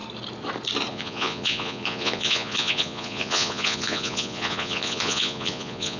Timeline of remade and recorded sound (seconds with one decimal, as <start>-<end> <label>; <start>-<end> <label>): 0.0-0.9 recorded; 0.9-6.0 remade